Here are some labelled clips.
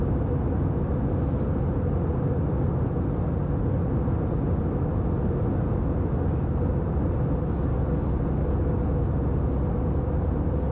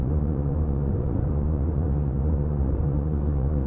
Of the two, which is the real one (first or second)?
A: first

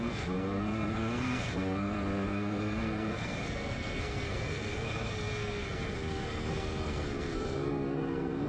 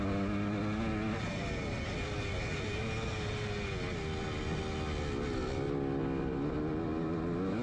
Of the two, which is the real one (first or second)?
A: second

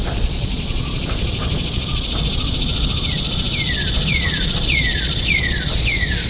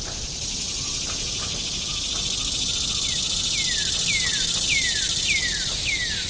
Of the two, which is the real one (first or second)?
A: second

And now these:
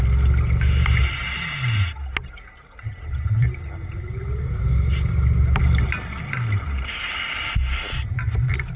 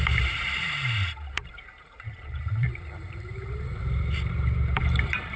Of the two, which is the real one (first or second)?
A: first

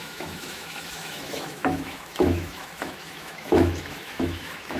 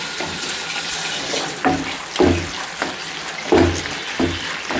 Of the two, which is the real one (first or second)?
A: second